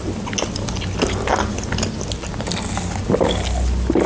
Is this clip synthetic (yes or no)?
no